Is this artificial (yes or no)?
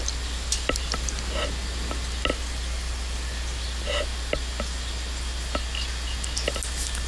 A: no